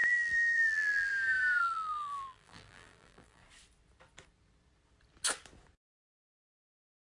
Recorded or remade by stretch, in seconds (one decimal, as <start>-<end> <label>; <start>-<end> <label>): 0.0-1.1 remade; 1.1-1.6 recorded; 1.6-3.4 remade; 3.4-5.8 recorded; 5.8-7.0 remade